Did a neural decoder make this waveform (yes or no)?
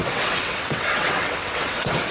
yes